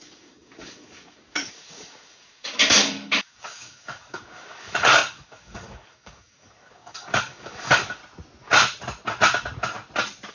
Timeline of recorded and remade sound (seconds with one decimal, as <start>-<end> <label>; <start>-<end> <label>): 0.0-8.0 remade; 8.0-10.3 recorded